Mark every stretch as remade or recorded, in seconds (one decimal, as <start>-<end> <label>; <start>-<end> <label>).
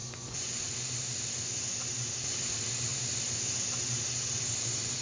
0.0-1.0 remade; 1.0-5.0 recorded